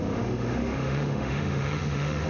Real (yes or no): no